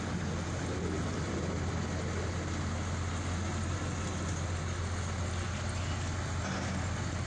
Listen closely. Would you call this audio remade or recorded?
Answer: recorded